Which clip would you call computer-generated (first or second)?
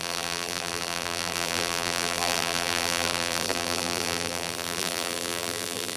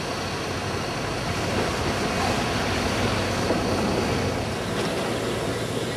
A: first